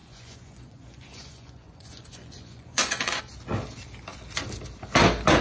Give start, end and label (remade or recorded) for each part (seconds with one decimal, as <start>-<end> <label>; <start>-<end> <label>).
0.0-3.2 remade; 3.2-5.4 recorded